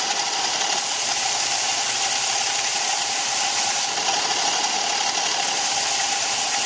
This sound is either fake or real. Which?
fake